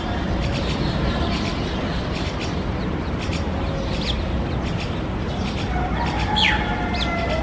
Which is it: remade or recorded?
recorded